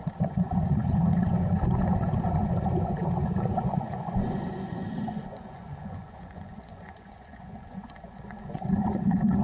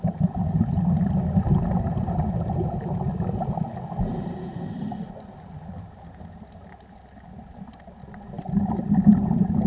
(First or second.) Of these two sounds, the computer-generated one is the first